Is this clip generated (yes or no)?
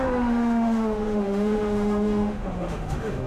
yes